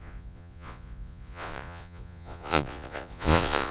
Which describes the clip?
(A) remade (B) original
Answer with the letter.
A